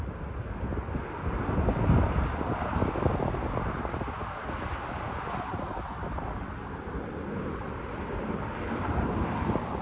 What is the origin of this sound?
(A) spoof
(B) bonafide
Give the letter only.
B